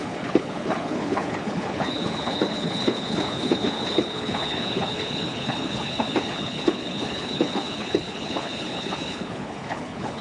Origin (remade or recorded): remade